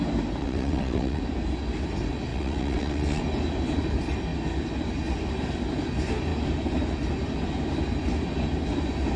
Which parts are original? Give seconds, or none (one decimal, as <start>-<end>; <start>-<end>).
0.0-0.4; 1.2-2.3; 3.2-9.2